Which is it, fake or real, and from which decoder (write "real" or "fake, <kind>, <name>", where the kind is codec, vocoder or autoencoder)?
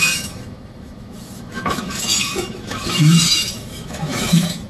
fake, autoencoder, DAC-VAE